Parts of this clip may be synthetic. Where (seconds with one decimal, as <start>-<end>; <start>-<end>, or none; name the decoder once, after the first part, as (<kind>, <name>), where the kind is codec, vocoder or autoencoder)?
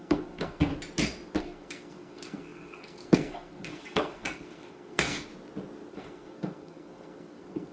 0.0-0.7 (codec, SNAC); 1.4-5.3; 5.9-7.7